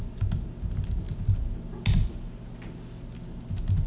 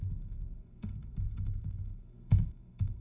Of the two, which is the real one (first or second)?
first